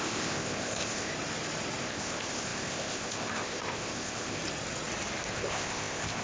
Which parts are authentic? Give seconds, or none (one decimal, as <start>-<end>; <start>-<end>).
1.1-1.8; 4.4-5.3